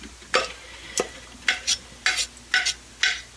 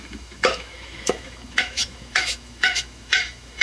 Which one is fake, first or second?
second